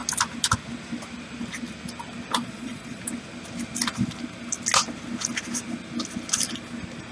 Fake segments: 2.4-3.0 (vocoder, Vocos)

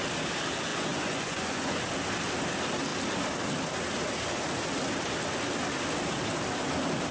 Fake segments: 0.7-1.8 (vocoder, Vocos)

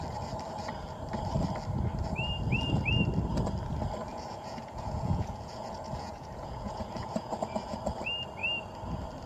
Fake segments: 4.1-7.8 (vocoder, Vocos)

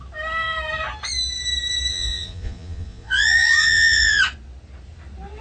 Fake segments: 1.9-4.2 (vocoder, Vocos)

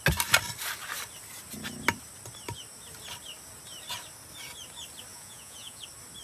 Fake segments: 5.1-5.8 (vocoder, Vocos)